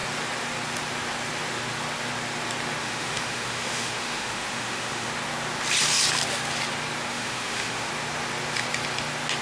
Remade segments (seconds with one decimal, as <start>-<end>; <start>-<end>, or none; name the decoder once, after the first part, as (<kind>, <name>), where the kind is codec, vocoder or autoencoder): 2.8-5.1 (autoencoder, DAC-VAE); 7.1-7.9